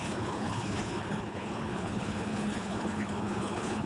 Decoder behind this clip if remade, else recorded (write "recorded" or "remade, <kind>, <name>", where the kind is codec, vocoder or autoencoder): remade, codec, HILCodec